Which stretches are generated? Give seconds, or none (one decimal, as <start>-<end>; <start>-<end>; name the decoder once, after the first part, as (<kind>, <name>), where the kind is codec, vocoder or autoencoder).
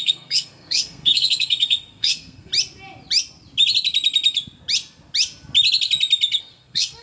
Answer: 0.0-2.5 (codec, SNAC); 6.4-7.0